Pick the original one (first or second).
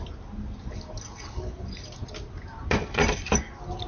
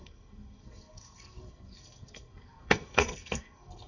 first